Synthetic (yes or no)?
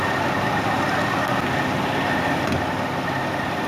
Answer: no